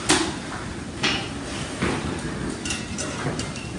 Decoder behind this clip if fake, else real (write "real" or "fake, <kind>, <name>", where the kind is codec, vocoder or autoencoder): real